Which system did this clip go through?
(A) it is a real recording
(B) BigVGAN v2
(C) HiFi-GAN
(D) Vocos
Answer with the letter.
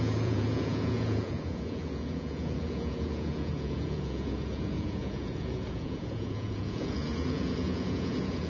D